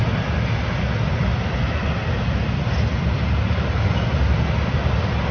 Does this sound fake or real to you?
real